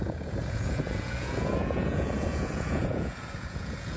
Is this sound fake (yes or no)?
yes